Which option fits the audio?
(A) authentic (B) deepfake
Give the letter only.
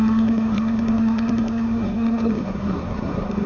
B